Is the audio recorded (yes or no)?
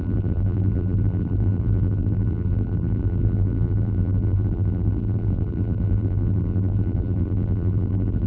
no